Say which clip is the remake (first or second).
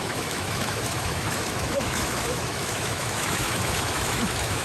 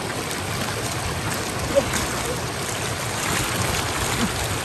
first